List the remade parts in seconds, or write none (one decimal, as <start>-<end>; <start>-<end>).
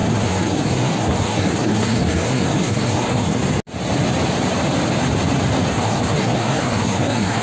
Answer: 0.0-3.4; 5.7-7.4